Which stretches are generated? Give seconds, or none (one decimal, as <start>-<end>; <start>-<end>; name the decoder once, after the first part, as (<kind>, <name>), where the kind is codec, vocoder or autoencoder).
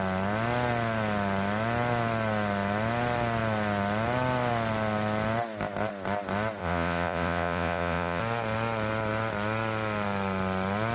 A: 6.6-8.2 (vocoder, Vocos)